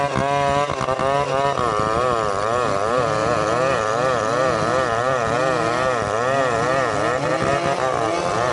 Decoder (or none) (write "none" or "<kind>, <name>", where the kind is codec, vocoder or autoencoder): none